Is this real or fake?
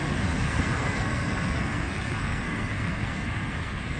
fake